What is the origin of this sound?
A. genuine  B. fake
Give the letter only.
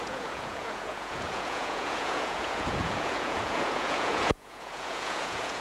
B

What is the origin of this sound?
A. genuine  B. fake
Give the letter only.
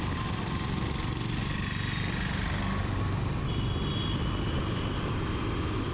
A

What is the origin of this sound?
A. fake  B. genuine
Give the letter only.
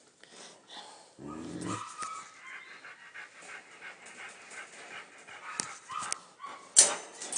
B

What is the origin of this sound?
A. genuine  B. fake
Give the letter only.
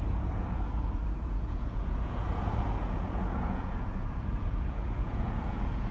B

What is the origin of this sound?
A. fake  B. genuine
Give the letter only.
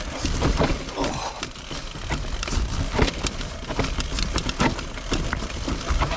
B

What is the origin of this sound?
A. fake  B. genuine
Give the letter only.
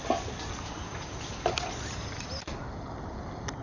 B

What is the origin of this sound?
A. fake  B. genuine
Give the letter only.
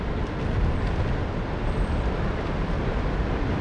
B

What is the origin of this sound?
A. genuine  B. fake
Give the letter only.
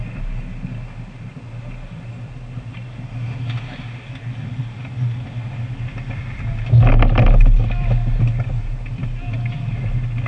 A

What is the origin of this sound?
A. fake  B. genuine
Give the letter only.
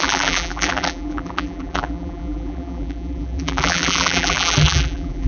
A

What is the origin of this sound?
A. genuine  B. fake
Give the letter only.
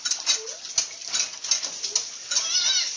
A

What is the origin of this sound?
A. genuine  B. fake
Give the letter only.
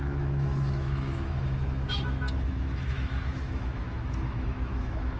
B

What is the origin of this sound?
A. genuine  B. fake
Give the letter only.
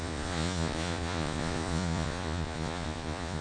B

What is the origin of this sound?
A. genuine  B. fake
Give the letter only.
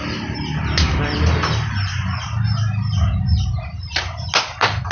A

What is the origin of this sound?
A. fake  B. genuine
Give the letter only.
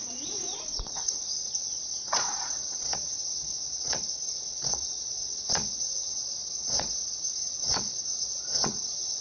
A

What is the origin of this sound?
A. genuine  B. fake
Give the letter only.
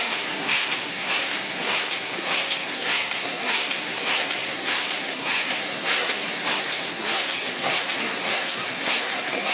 B